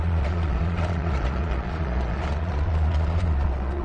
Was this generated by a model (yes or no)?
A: yes